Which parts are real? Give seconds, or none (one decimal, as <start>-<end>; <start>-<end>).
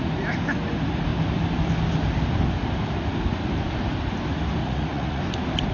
0.0-4.6; 5.2-5.7